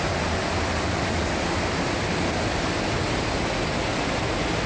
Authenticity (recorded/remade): recorded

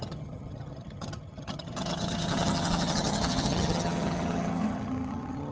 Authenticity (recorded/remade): remade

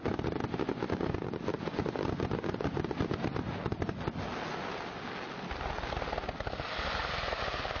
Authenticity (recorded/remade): recorded